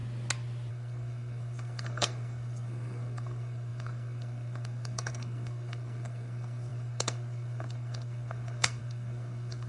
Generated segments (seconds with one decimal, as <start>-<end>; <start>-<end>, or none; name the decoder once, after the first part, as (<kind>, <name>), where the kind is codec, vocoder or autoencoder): 0.7-9.7 (codec, SNAC)